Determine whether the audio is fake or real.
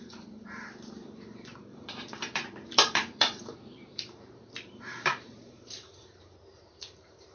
fake